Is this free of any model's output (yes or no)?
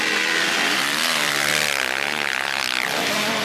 no